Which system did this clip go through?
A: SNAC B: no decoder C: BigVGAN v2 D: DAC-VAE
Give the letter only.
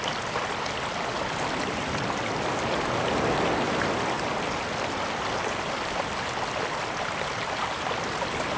B